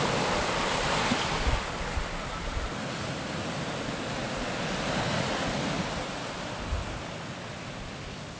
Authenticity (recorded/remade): recorded